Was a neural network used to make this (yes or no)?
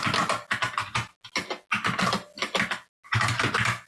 no